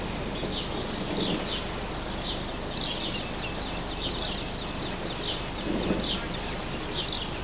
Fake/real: real